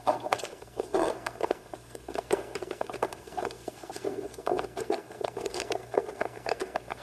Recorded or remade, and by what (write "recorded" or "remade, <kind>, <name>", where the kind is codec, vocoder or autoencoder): remade, codec, SNAC